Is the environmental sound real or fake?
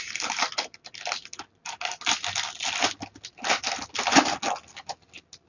real